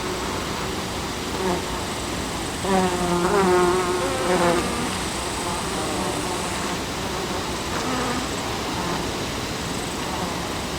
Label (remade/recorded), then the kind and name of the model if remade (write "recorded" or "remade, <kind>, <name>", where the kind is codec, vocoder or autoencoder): recorded